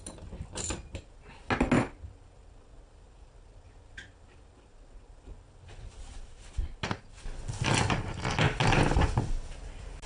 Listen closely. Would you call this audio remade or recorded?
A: recorded